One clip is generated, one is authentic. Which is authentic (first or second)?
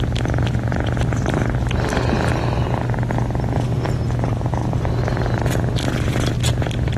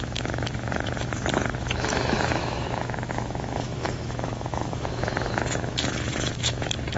first